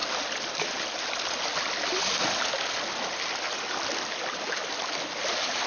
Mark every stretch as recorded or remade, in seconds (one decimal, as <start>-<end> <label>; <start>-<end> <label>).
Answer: 0.0-1.1 remade; 1.1-5.7 recorded